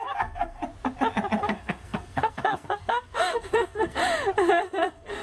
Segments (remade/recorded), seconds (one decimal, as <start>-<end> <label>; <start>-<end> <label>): 0.0-0.6 remade; 0.6-1.4 recorded; 1.4-4.0 remade; 4.0-4.5 recorded; 4.5-5.2 remade